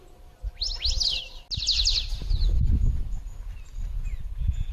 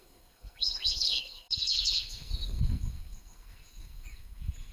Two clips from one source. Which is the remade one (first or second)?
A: second